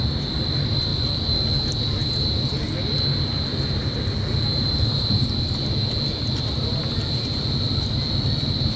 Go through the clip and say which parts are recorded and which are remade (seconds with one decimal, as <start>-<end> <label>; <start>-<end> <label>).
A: 0.0-3.5 recorded; 3.5-5.3 remade; 5.3-8.8 recorded